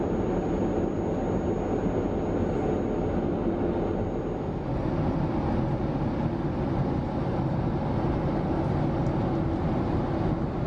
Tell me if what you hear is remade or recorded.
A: recorded